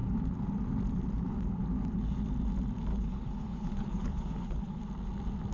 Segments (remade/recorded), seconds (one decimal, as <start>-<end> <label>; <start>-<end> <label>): 0.0-2.9 recorded; 2.9-4.8 remade; 4.8-5.5 recorded